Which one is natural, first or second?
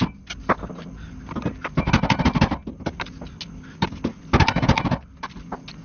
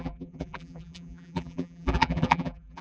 first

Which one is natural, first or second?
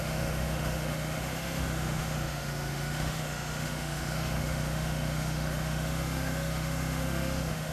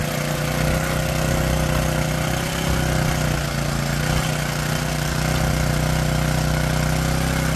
second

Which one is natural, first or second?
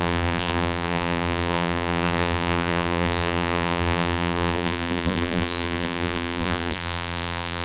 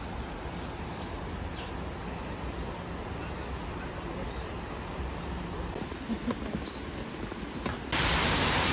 second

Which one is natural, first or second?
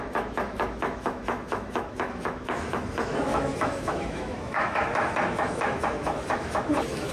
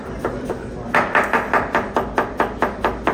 second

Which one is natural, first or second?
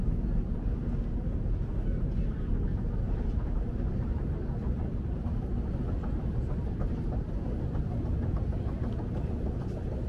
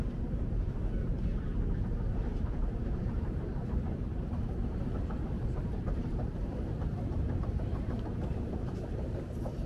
first